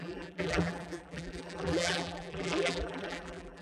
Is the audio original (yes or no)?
no